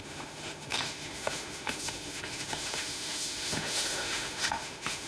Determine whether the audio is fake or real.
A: fake